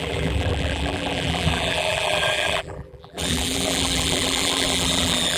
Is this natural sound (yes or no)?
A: no